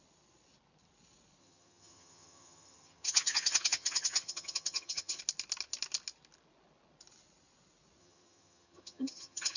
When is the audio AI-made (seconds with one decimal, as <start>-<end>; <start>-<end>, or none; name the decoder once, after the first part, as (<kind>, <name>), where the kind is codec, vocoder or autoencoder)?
1.4-5.2 (vocoder, HiFi-GAN); 8.0-9.6